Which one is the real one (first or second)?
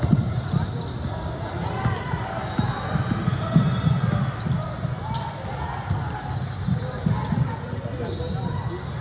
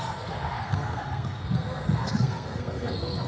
first